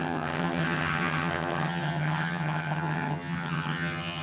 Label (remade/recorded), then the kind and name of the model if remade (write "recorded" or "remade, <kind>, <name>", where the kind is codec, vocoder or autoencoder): remade, vocoder, HiFi-GAN